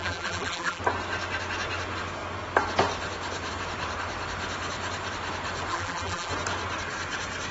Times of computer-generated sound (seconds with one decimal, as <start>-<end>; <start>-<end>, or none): 0.0-0.8; 5.7-6.3

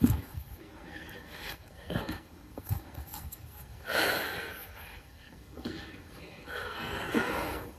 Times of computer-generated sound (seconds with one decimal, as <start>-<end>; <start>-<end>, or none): 0.0-7.8

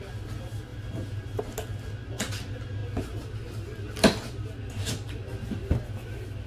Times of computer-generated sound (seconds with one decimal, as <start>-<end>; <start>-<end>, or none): none

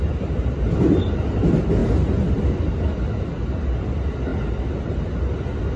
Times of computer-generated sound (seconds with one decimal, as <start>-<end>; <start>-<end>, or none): none

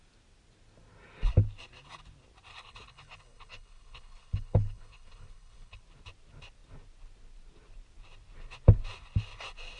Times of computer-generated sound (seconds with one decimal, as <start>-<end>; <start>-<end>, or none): 2.5-5.8

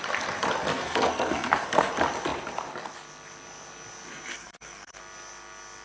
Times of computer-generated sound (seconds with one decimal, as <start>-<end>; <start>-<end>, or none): 0.7-1.9; 4.3-5.0

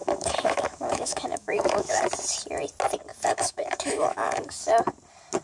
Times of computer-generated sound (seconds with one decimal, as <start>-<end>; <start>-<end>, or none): 0.0-2.0; 3.1-4.8